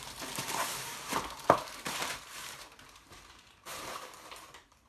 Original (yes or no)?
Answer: no